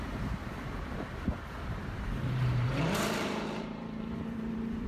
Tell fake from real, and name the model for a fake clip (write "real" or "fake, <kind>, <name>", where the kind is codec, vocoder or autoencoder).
fake, vocoder, BigVGAN v2